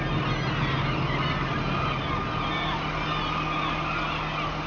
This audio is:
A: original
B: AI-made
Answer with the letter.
A